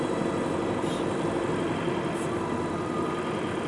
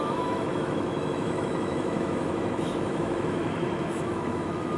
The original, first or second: first